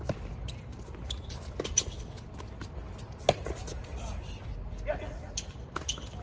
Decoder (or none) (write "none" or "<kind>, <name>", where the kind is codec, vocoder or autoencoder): none